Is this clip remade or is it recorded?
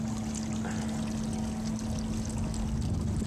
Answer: recorded